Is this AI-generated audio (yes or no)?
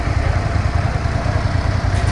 yes